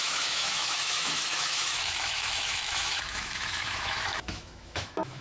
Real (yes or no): no